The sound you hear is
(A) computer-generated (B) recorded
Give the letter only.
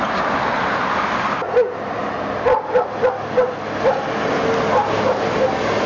B